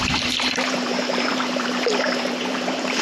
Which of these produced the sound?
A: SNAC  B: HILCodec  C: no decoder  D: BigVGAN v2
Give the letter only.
D